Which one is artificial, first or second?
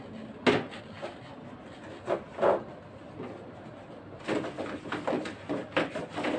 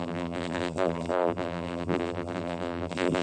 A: second